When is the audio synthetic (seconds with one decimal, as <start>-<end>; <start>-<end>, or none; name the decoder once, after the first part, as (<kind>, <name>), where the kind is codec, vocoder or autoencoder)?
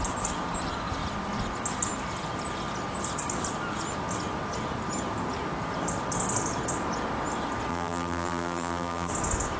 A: 7.7-9.1 (vocoder, BigVGAN v2)